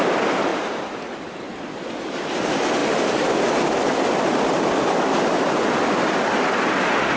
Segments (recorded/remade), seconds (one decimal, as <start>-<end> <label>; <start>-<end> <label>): 0.0-7.2 recorded